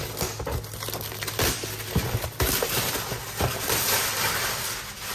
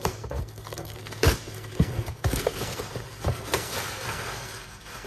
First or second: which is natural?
first